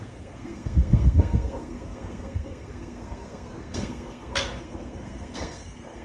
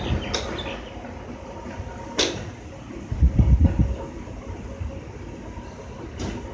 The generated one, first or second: first